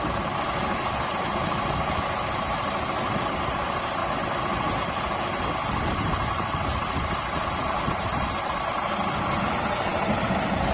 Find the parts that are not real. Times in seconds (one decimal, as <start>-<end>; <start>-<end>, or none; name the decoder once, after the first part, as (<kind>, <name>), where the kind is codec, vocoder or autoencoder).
none